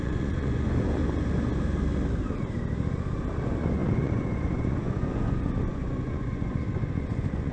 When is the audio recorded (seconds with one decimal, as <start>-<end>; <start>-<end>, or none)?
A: 1.0-3.4